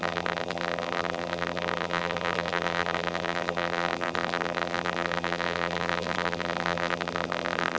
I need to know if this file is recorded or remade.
remade